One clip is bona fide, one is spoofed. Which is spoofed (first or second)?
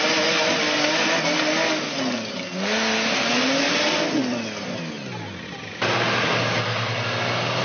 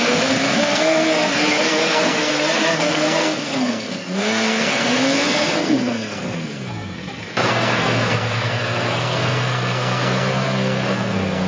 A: second